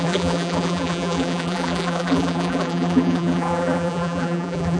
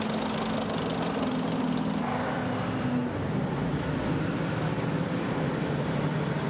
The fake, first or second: first